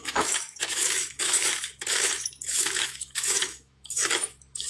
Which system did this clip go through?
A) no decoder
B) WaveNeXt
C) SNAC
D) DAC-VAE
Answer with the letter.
D